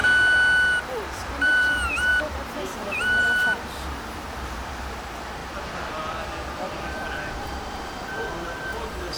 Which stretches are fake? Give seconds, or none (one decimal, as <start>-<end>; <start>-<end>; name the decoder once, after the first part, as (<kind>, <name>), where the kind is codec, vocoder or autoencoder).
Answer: 1.3-5.4 (vocoder, BigVGAN v2); 7.3-9.2